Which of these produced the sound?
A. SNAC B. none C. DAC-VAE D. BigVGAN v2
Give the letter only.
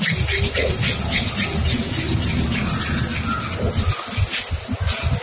B